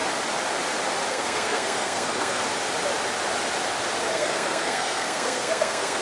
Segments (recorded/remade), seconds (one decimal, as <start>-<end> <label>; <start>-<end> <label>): 0.0-1.1 recorded; 1.1-2.4 remade; 2.4-4.1 recorded; 4.1-6.0 remade